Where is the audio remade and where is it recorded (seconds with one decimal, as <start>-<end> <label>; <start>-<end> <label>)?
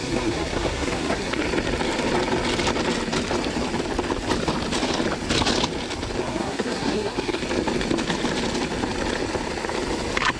0.0-1.4 remade; 1.4-6.2 recorded; 6.2-7.4 remade; 7.4-10.4 recorded